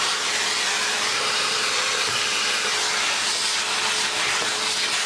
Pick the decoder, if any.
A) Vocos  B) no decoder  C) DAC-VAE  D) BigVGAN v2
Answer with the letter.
D